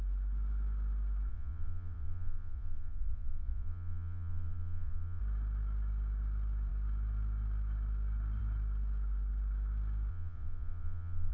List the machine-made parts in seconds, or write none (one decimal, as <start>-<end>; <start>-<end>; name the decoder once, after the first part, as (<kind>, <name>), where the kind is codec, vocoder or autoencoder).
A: 1.3-5.2 (vocoder, Vocos); 10.1-11.3